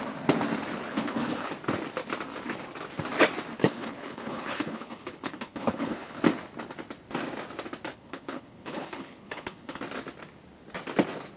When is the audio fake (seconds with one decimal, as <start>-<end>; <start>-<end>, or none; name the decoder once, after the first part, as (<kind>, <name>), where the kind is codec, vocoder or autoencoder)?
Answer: 0.9-1.5 (codec, HILCodec); 3.6-6.2; 7.9-9.8